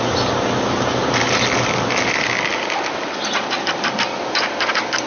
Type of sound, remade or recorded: recorded